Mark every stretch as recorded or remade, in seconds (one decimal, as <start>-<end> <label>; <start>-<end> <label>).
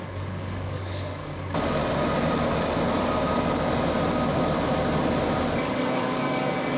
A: 0.0-1.8 remade; 1.8-5.4 recorded; 5.4-6.8 remade